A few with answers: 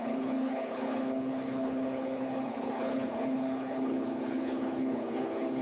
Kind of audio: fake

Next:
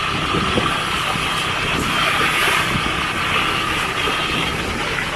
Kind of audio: real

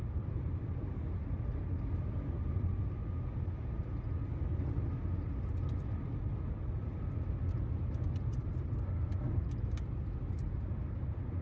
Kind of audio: real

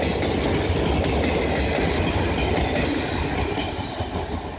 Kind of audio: real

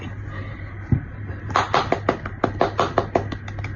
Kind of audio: real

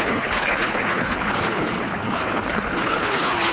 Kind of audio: fake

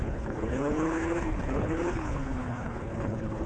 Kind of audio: fake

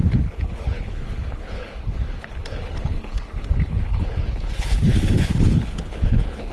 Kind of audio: fake